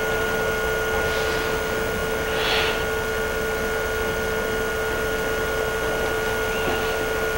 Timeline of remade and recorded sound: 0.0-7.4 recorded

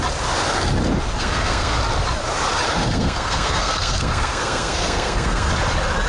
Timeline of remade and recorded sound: 0.0-1.2 recorded; 1.2-1.8 remade; 1.8-2.8 recorded; 2.8-5.5 remade; 5.5-6.1 recorded

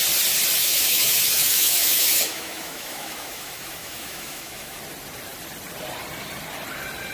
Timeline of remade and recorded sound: 0.0-0.6 recorded; 0.6-4.8 remade; 4.8-7.1 recorded

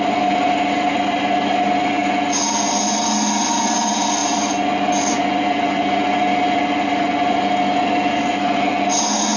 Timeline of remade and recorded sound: 0.0-9.4 recorded

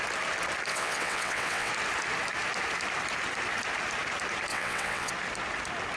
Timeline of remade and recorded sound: 0.0-0.7 recorded; 0.7-1.7 remade; 1.7-4.5 recorded; 4.5-5.1 remade; 5.1-6.0 recorded

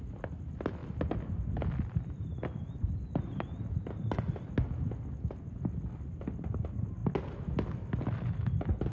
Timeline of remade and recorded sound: 0.0-8.9 recorded

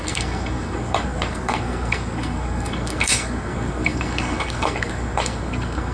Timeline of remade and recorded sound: 0.0-5.9 remade

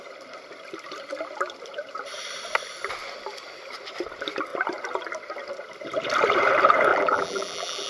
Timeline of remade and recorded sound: 0.0-6.9 recorded; 6.9-7.9 remade